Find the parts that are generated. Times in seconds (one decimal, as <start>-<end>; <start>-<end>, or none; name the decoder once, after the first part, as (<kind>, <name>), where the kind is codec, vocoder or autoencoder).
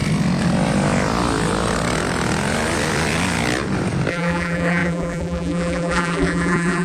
4.1-6.8 (vocoder, BigVGAN v2)